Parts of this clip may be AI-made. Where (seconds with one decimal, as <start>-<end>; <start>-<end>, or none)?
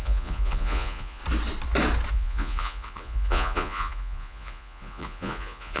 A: 0.0-1.2; 2.1-5.8